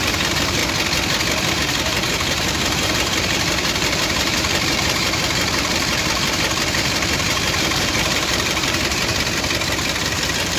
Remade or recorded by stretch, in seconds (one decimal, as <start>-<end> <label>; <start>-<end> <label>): 0.0-0.6 remade; 0.6-1.5 recorded; 1.5-9.1 remade; 9.1-10.0 recorded; 10.0-10.6 remade